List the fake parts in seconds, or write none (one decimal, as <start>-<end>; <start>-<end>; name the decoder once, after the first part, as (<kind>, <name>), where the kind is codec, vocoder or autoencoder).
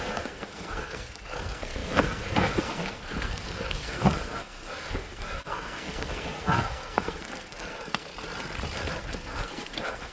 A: 0.0-8.1 (codec, SNAC); 9.0-10.1